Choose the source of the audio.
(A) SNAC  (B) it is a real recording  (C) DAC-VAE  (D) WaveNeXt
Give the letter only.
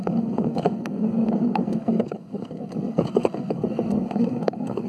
A